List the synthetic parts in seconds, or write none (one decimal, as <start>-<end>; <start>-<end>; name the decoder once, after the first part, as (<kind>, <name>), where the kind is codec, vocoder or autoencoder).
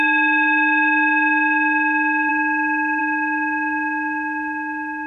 2.3-3.0 (autoencoder, DAC-VAE)